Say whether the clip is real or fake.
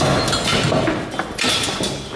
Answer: real